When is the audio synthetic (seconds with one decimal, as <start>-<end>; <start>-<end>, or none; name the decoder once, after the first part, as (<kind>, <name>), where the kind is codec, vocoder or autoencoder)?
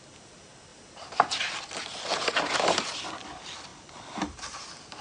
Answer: 0.7-1.4 (vocoder, BigVGAN v2); 3.7-4.4